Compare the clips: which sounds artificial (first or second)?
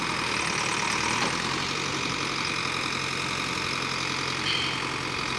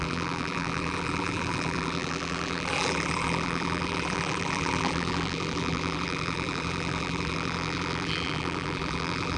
second